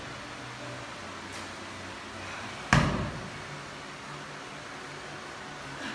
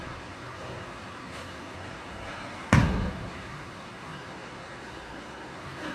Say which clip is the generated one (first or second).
second